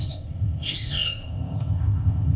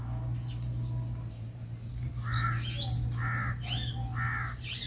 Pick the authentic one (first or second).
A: second